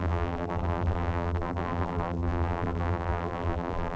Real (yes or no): no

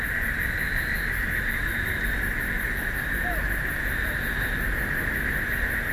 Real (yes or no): yes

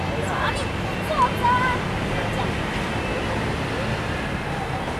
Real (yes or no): yes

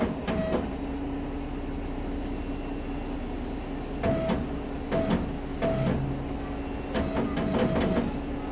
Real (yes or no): yes